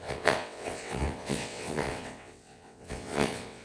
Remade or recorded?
remade